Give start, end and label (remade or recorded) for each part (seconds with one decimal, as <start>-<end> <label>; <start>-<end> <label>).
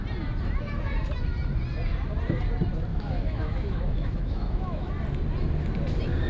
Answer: 0.0-2.9 recorded; 2.9-4.9 remade; 4.9-6.3 recorded